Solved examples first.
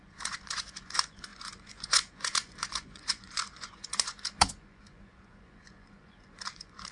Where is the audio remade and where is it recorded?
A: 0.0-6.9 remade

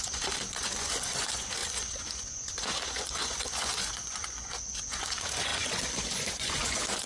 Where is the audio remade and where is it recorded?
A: 0.0-7.1 remade

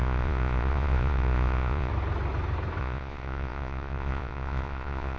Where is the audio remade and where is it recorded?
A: 0.0-1.9 remade; 1.9-2.8 recorded; 2.8-5.2 remade

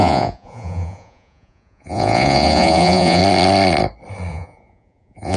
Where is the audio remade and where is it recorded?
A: 0.0-3.2 remade; 3.2-4.3 recorded; 4.3-5.4 remade